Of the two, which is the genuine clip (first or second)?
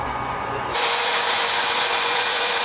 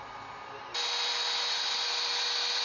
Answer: second